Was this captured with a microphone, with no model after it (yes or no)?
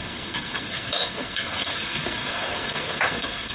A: no